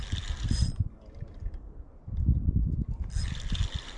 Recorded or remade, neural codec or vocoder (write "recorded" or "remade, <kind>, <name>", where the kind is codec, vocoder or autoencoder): recorded